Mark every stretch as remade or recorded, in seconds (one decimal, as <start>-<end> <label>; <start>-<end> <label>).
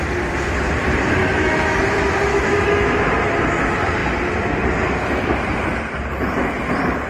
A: 0.0-1.2 recorded; 1.2-1.8 remade; 1.8-2.3 recorded; 2.3-3.3 remade; 3.3-7.1 recorded